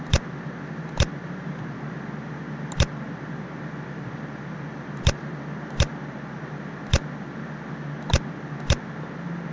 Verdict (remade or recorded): recorded